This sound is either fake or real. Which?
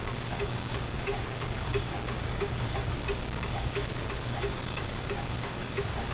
fake